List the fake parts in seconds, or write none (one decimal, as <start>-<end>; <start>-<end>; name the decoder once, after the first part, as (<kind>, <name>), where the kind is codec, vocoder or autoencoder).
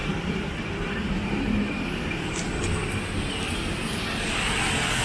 0.0-2.0 (vocoder, BigVGAN v2)